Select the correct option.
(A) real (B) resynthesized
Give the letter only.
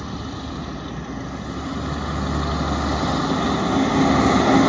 A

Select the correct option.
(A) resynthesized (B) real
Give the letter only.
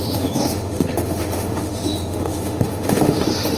A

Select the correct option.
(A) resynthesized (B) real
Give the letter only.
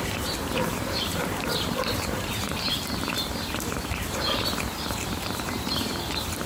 A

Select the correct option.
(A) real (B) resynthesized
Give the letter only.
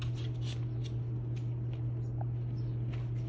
A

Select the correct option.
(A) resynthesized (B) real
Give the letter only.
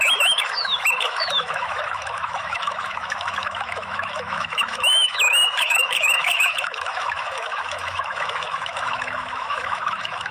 A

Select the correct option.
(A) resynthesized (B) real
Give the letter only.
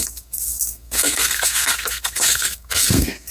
A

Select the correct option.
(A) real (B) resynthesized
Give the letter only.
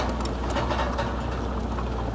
A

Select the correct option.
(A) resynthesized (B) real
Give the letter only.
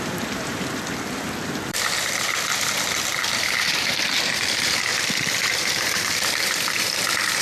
A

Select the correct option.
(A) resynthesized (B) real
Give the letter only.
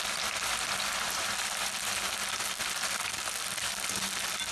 B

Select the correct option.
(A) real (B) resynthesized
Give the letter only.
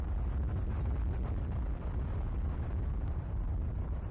B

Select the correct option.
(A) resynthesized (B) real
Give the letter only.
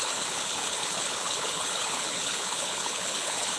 A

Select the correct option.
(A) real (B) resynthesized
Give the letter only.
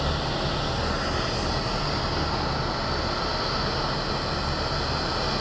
A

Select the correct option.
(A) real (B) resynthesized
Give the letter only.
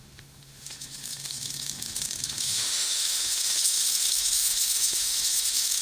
B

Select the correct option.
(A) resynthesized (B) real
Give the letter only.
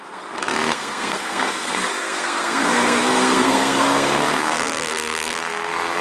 A